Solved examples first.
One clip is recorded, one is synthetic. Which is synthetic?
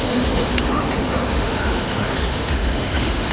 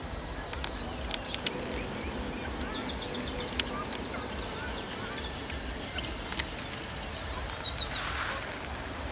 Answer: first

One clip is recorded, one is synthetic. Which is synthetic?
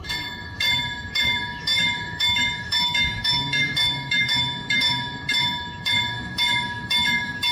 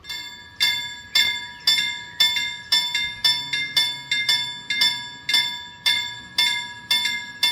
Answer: first